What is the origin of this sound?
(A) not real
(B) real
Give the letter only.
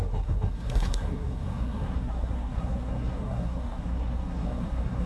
A